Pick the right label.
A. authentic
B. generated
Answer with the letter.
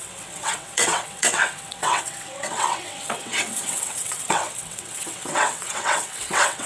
B